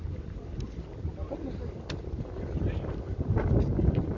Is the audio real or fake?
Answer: real